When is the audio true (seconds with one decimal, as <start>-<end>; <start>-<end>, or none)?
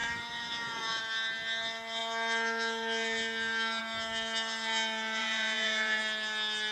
1.0-5.2; 6.0-6.7